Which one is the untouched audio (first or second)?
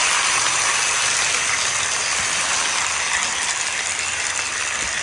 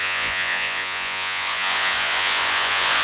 first